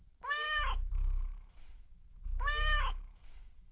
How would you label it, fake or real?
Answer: fake